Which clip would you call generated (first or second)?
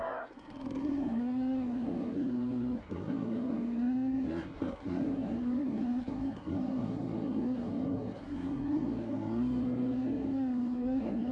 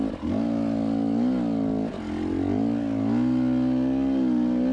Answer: first